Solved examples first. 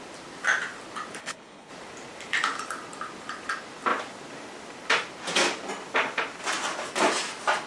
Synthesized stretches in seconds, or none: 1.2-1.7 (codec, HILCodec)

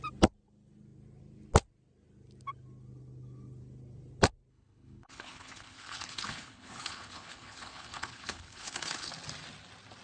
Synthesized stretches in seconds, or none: 4.5-9.1 (codec, HILCodec)

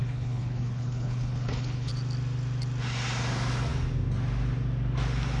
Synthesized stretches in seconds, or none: 0.0-1.9 (codec, HILCodec)

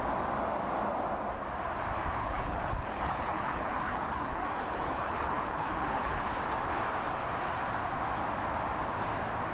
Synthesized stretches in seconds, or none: 2.2-6.3 (codec, HILCodec)

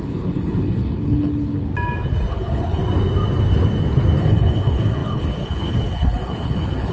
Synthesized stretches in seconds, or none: 0.0-1.7 (codec, HILCodec); 2.3-2.8; 4.2-6.9

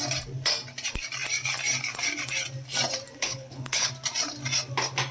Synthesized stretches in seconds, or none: 3.2-3.9 (codec, HILCodec)